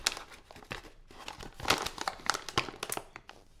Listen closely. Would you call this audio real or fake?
real